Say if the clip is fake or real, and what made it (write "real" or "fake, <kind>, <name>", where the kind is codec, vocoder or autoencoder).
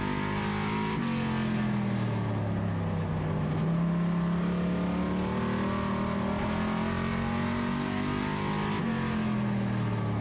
real